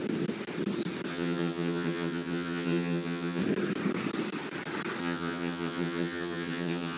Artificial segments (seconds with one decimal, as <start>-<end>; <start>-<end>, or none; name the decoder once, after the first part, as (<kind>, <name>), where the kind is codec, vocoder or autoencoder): 1.1-3.4 (vocoder, HiFi-GAN); 5.0-7.0